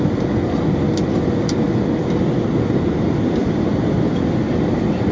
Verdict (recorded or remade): recorded